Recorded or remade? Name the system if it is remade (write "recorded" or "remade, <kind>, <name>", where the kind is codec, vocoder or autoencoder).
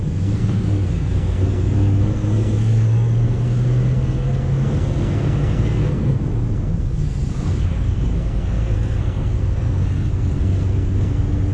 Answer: remade, codec, SNAC